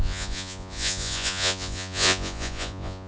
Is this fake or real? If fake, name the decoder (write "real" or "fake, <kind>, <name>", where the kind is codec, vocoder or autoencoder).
fake, vocoder, Vocos